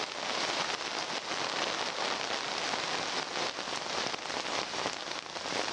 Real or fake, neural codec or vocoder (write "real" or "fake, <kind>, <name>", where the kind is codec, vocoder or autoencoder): real